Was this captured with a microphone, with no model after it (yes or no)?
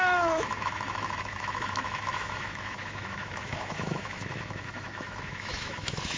no